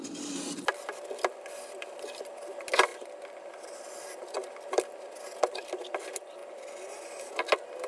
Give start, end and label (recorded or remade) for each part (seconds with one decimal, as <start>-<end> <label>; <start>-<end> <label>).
0.0-6.4 remade; 6.4-7.3 recorded; 7.3-7.9 remade